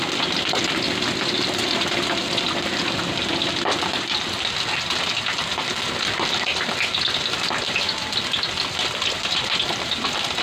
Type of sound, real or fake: real